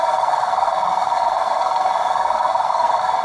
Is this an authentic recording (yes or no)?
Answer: no